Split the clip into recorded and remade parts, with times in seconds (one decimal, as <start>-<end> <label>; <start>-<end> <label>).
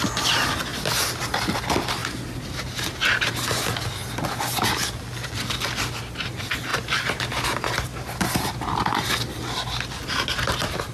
0.0-2.0 recorded; 2.0-3.3 remade; 3.3-6.7 recorded; 6.7-9.4 remade; 9.4-10.9 recorded